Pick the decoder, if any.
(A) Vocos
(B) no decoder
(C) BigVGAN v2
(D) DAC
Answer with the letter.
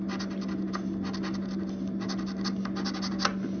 B